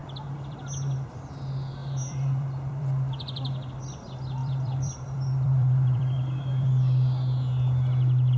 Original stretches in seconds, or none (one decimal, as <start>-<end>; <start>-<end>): 1.2-1.8; 3.7-4.4; 6.7-8.4